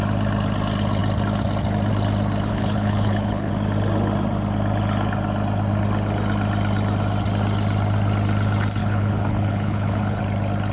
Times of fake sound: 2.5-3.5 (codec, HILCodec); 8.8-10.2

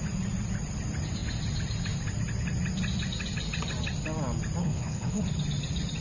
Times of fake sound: 4.6-5.2 (codec, HILCodec)

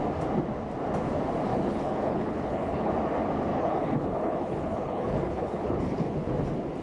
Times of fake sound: 1.5-2.9 (codec, HILCodec); 3.5-6.3

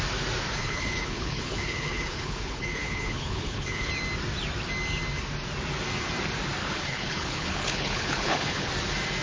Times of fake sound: 0.6-3.9 (codec, HILCodec); 6.6-8.7

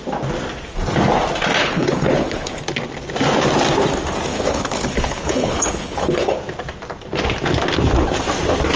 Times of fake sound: 1.6-2.6 (codec, HILCodec); 4.3-6.4

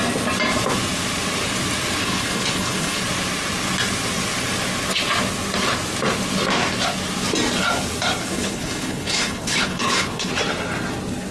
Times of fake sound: 2.0-3.0 (codec, HILCodec); 8.2-10.3